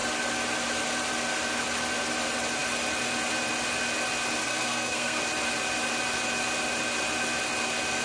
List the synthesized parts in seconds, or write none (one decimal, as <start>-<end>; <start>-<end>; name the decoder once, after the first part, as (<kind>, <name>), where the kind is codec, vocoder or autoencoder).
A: 4.4-5.2 (codec, SNAC)